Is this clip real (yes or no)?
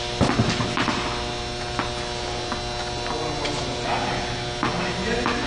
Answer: yes